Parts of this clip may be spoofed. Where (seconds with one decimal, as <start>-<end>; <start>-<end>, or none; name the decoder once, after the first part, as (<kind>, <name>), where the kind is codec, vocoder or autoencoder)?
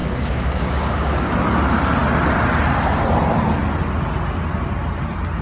0.0-1.3 (codec, DAC)